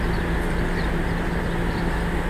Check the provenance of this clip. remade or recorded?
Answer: recorded